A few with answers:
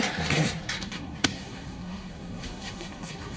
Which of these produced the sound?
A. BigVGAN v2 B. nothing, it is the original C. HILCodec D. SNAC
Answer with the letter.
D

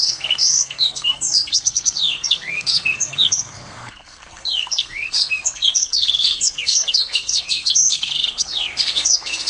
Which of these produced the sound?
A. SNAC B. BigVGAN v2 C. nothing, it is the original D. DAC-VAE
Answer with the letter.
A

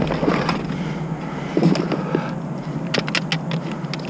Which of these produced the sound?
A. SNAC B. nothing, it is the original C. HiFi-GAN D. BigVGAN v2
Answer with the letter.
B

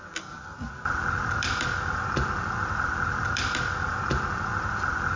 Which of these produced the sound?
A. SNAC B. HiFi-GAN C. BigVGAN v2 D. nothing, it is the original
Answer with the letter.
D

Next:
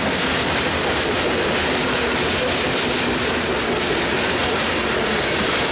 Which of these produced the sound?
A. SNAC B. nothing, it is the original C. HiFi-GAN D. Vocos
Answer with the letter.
B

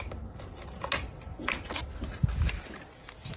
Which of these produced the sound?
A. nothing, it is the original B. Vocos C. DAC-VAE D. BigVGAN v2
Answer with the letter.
A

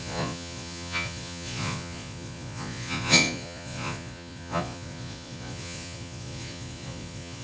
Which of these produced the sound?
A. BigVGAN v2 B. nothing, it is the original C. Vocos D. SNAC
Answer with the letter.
C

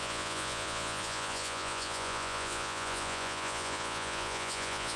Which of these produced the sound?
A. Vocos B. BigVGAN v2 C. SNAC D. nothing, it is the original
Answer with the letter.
A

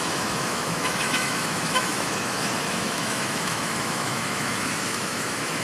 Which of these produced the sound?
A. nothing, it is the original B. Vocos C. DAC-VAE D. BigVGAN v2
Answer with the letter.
C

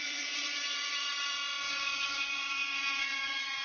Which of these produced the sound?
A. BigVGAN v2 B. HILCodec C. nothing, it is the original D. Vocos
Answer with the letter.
D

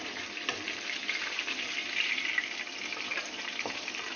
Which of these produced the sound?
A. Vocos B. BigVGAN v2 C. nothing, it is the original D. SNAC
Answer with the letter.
B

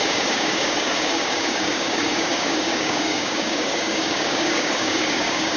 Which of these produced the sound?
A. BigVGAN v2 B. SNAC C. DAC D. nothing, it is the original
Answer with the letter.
C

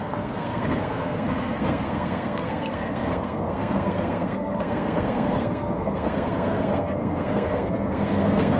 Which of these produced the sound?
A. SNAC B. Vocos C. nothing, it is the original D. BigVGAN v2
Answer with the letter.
A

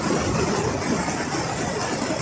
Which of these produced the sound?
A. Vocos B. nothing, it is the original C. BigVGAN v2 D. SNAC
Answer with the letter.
B